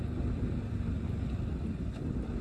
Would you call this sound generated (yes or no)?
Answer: no